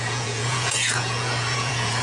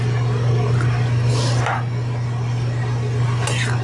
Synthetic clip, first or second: first